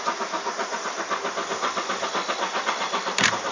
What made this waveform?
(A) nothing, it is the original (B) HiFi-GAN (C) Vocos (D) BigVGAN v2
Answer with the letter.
A